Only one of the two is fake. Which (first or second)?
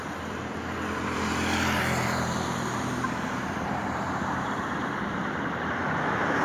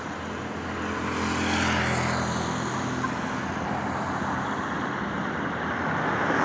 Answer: first